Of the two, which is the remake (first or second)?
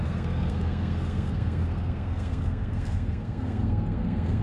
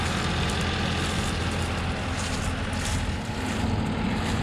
first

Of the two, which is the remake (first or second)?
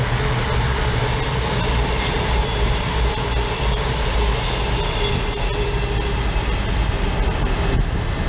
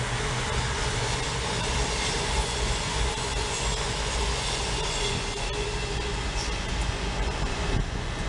second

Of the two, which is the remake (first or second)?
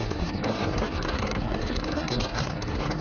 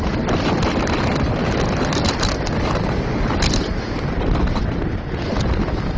first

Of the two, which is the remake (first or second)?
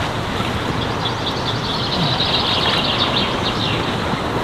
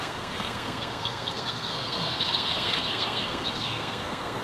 second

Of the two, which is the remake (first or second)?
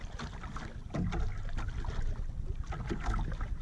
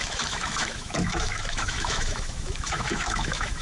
second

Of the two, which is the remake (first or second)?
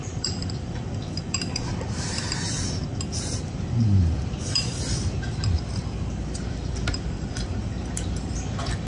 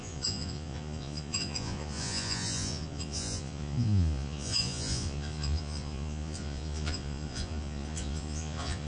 second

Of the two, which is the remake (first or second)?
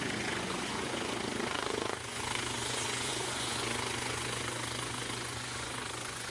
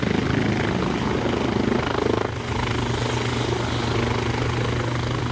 first